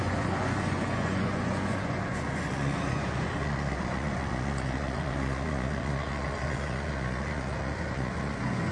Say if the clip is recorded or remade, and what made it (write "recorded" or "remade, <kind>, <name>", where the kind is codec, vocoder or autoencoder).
remade, vocoder, Vocos